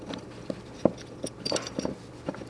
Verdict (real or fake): real